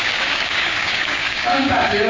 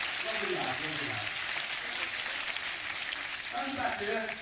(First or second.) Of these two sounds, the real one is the second